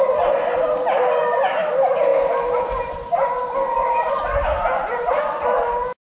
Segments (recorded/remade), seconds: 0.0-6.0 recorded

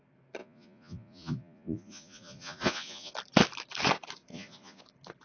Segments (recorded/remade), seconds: 0.0-0.4 recorded; 0.4-3.1 remade; 3.1-4.3 recorded; 4.3-4.8 remade; 4.8-5.2 recorded

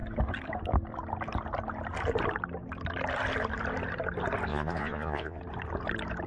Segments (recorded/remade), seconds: 0.0-4.5 recorded; 4.5-5.4 remade; 5.4-6.3 recorded